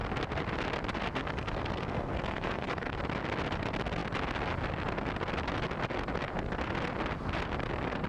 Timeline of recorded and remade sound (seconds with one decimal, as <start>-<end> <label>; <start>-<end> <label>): 0.0-1.2 recorded; 1.2-3.0 remade; 3.0-8.1 recorded